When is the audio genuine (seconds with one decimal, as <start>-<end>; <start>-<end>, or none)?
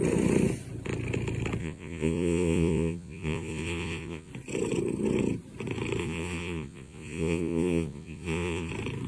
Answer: 0.0-1.6; 4.3-6.0; 8.7-9.1